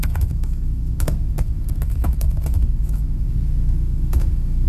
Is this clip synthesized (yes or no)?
yes